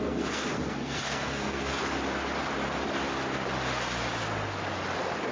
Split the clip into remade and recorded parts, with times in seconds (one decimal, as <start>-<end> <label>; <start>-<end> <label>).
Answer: 0.0-1.7 remade; 1.7-5.3 recorded